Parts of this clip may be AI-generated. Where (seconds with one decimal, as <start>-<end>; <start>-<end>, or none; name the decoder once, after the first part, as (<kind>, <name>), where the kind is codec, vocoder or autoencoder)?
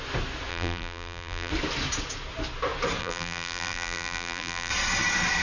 0.5-1.5 (vocoder, BigVGAN v2); 3.0-4.7